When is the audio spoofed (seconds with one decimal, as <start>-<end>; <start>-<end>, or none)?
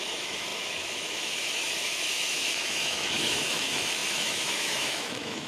0.0-5.5